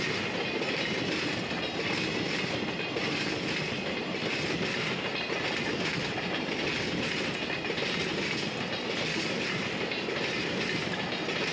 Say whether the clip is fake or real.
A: real